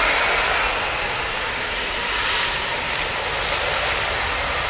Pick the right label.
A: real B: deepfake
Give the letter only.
A